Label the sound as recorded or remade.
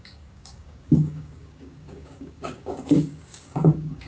remade